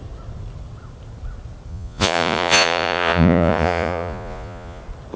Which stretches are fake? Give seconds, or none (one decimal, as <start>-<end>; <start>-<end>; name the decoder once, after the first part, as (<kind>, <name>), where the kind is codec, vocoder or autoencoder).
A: 1.7-4.8 (vocoder, Vocos)